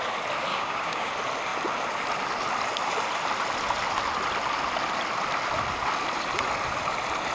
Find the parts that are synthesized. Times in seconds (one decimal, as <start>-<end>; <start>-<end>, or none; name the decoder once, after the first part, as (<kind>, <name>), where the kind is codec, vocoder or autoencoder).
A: 0.5-1.1 (codec, DAC)